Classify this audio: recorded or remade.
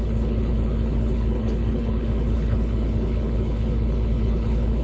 remade